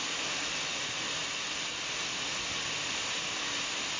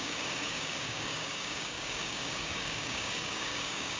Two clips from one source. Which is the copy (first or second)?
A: second